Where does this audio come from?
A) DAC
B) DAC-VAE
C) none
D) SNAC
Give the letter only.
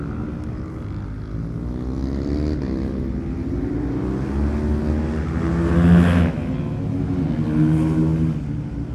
C